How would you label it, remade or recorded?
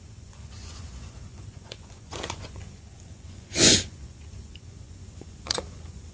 remade